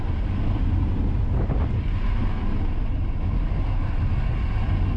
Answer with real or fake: real